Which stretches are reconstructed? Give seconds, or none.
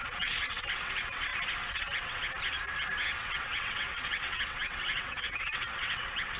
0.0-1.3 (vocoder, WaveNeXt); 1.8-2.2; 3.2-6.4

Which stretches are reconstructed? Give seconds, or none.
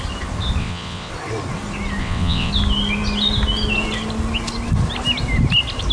0.6-1.1 (vocoder, WaveNeXt); 2.0-2.5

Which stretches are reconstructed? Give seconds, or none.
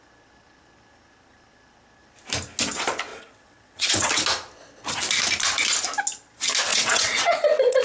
3.1-4.1 (vocoder, WaveNeXt); 6.7-7.8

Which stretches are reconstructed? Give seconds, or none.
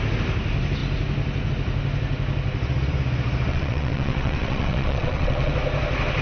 3.5-5.5 (vocoder, WaveNeXt)